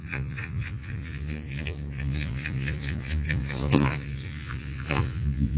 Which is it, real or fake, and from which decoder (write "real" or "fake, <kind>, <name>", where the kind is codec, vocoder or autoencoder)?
fake, vocoder, Vocos